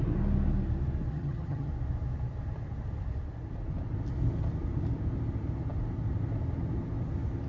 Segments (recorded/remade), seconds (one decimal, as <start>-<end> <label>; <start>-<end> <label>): 0.0-1.1 recorded; 1.1-1.7 remade; 1.7-7.5 recorded